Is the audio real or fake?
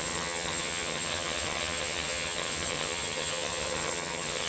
fake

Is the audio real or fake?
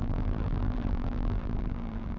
fake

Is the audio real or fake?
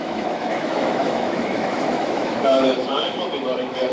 fake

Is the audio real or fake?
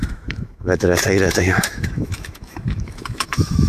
fake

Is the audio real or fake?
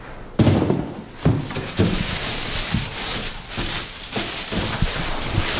real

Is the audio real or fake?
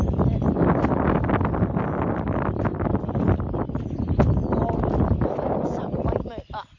real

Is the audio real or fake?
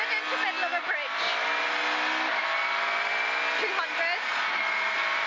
real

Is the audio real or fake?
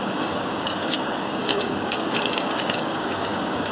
fake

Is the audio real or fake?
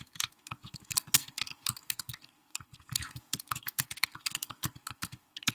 fake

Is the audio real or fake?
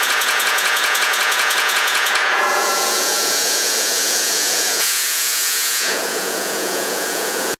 fake